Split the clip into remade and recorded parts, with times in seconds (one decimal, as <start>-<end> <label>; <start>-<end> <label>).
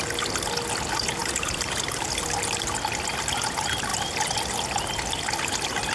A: 0.0-1.2 recorded; 1.2-2.1 remade; 2.1-5.9 recorded